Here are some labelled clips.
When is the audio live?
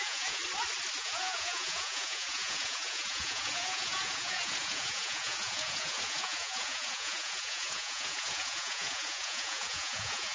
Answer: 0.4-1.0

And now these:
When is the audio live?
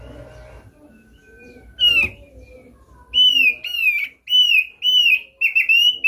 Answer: 0.0-6.1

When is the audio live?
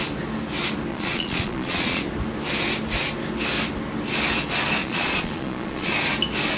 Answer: 0.0-0.9; 2.0-4.8; 5.9-6.6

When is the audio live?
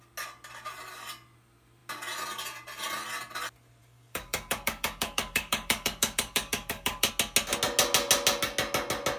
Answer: 0.0-3.8; 7.1-9.2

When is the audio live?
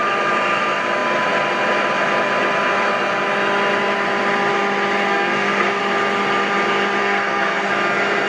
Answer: 0.0-5.1; 5.8-7.0; 7.7-8.3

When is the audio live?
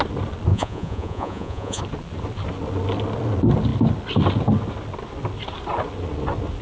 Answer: 0.0-0.5; 1.8-6.6